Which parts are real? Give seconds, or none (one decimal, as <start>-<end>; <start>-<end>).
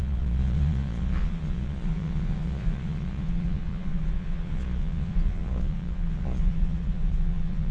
none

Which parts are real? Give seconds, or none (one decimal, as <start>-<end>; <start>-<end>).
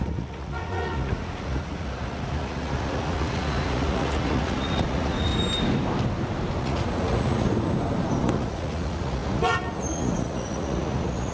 5.3-6.6; 7.5-8.2